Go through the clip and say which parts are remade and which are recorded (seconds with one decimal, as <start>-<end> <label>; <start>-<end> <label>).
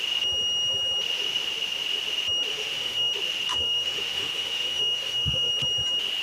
0.0-2.5 recorded; 2.5-3.1 remade; 3.1-3.5 recorded; 3.5-5.5 remade; 5.5-6.2 recorded